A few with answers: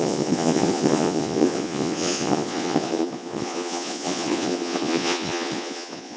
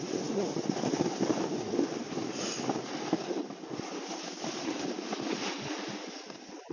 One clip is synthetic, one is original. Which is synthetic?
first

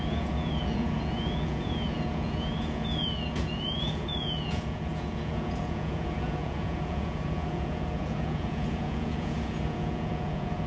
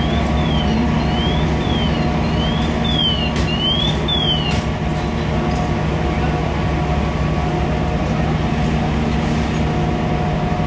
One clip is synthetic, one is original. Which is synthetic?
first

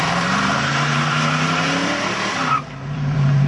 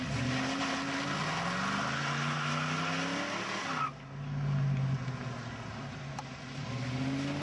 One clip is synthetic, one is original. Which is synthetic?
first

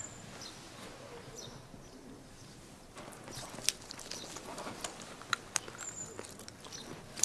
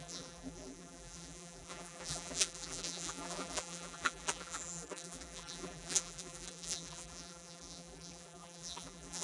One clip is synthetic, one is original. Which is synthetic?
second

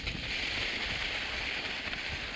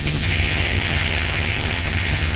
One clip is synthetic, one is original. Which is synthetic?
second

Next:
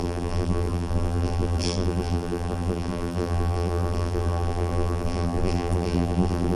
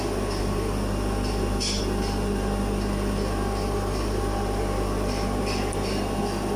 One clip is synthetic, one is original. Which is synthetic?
first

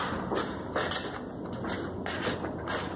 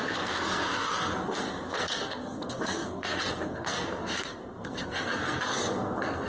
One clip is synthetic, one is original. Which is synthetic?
second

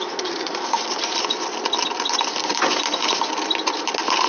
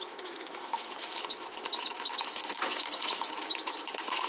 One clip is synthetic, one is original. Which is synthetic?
second